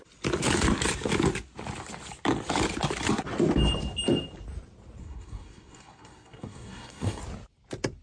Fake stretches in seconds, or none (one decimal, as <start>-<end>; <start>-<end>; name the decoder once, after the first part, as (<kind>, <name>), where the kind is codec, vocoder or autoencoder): 5.0-7.2 (codec, SNAC)